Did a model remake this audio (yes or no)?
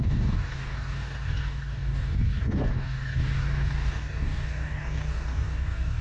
yes